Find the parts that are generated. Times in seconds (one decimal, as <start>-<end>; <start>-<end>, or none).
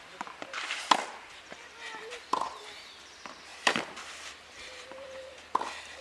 3.5-5.2